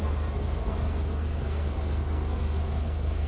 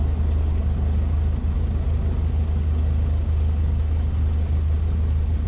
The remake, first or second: first